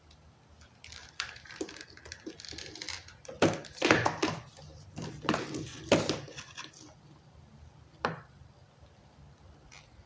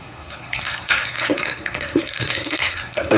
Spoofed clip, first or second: second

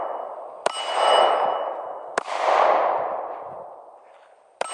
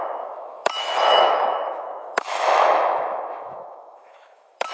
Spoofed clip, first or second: second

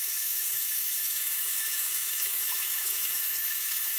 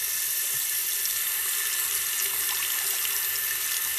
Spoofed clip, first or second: first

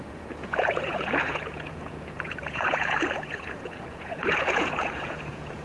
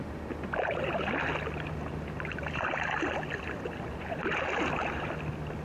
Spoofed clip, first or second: first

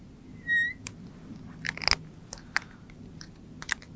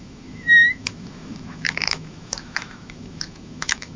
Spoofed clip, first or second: second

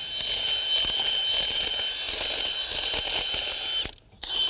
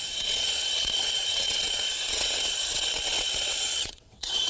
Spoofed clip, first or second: second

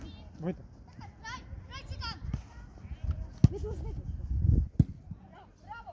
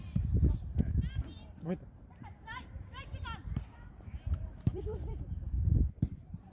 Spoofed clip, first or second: second